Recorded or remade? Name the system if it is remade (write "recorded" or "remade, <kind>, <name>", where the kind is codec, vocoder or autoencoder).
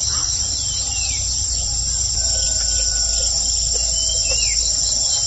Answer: recorded